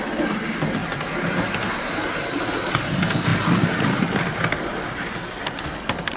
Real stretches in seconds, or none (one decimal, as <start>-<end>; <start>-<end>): 0.8-2.1